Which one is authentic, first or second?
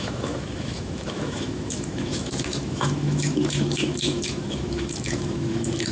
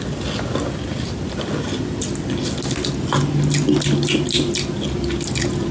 second